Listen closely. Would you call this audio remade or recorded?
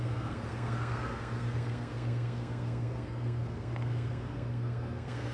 remade